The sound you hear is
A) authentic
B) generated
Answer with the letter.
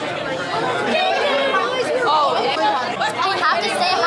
A